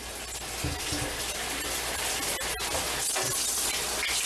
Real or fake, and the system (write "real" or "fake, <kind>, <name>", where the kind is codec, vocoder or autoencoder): real